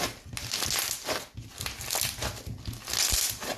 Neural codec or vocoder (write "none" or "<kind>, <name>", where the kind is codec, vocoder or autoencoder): none